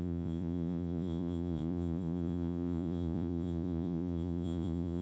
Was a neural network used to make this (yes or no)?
yes